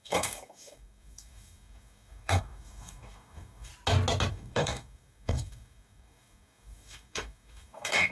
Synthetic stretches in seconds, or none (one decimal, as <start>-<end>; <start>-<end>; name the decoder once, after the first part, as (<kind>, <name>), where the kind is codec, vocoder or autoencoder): 0.0-3.7 (codec, DAC); 4.3-8.1